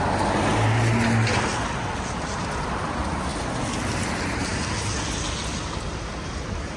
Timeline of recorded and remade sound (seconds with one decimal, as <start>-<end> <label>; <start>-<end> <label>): 0.0-6.8 recorded